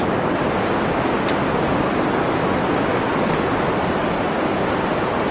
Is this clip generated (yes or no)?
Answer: no